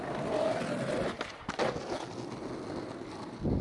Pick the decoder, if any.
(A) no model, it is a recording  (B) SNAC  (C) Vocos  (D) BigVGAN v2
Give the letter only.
A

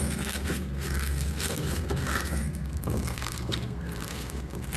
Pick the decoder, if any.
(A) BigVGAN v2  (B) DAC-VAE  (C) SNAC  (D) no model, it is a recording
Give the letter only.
C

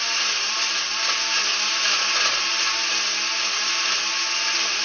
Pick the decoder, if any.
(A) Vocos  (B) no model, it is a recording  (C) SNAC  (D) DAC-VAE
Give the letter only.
B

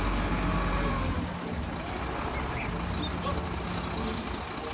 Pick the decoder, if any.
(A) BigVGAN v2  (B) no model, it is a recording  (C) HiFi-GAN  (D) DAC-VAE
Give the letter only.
B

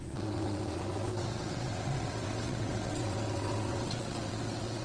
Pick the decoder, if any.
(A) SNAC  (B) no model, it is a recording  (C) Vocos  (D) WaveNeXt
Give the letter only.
D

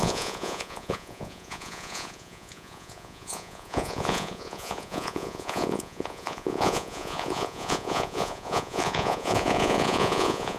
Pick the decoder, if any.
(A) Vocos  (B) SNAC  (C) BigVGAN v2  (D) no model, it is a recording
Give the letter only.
A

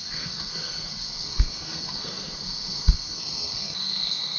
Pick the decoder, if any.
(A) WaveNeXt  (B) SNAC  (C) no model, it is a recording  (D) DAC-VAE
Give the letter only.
B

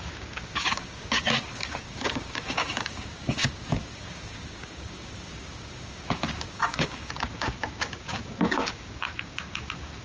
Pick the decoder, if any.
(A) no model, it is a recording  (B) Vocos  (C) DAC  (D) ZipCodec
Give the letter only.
C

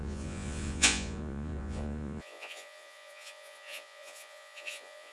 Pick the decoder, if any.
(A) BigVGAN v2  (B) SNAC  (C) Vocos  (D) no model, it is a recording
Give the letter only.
C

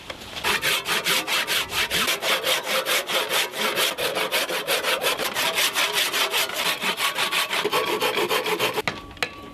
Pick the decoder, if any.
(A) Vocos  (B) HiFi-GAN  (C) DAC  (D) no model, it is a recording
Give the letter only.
D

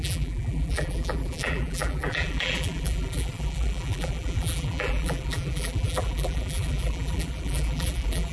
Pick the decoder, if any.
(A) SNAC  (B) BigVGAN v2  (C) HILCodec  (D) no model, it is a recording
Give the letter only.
B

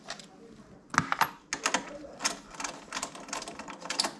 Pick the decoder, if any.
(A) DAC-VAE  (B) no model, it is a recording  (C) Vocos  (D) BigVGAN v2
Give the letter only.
B